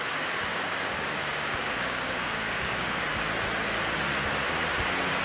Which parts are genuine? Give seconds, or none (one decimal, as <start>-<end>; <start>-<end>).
0.0-0.5; 3.0-5.2